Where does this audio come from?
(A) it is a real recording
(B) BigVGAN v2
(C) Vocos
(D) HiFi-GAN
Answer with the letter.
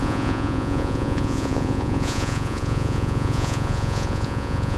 C